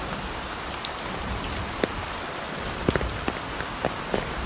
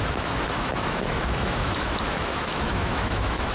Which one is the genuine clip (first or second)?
first